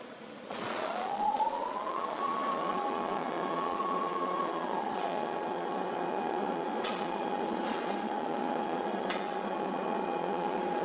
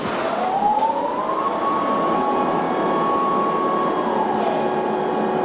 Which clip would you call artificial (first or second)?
first